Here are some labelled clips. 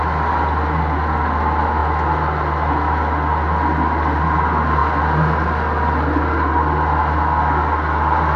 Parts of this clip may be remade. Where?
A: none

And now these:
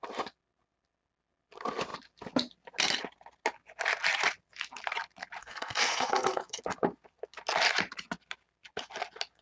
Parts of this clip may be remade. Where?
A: 5.4-6.6 (codec, SNAC)

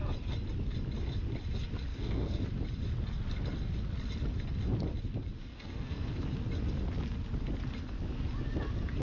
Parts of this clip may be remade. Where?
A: 1.9-2.4 (codec, SNAC); 5.4-6.1

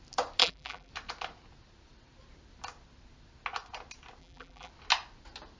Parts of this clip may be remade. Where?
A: 0.4-0.9 (vocoder, BigVGAN v2); 4.2-4.7

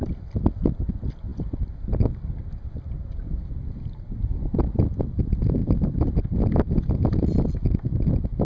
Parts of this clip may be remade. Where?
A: none

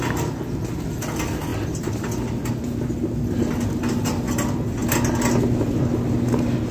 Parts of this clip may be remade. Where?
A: none